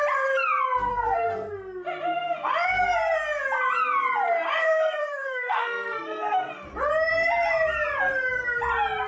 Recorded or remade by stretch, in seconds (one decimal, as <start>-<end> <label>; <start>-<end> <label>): 0.0-0.9 recorded; 0.9-1.5 remade; 1.5-4.6 recorded; 4.6-6.5 remade; 6.5-9.1 recorded